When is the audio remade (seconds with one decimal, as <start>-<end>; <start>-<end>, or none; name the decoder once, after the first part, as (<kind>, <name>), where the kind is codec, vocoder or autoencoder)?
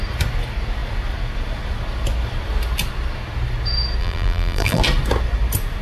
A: 4.0-4.8 (vocoder, BigVGAN v2)